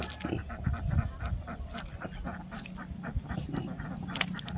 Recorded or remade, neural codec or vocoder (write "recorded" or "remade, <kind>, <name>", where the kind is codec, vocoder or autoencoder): recorded